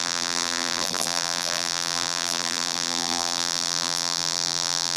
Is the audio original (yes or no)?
no